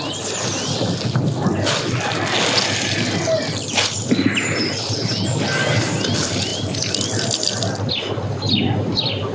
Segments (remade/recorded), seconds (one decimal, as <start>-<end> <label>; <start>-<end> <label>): 0.0-9.3 recorded